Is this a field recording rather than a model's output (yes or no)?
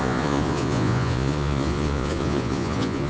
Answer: no